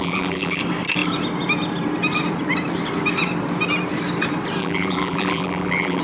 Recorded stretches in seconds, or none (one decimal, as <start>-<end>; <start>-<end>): 0.6-4.6